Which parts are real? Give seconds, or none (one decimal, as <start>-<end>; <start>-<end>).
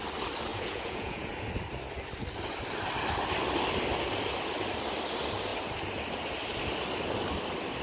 0.0-0.5; 1.3-7.8